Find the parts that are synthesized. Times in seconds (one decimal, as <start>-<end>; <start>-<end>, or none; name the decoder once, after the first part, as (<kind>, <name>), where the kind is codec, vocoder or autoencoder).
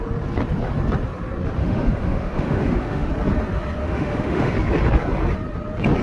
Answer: 1.6-3.1 (autoencoder, DAC-VAE); 3.8-4.5